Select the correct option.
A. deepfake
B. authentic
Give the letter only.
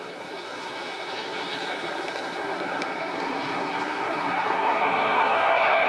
A